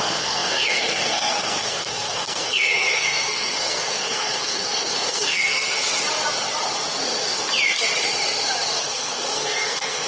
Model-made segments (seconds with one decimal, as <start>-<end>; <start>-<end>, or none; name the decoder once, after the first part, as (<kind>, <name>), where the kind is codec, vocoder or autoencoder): 0.0-5.8 (codec, SNAC); 8.8-10.1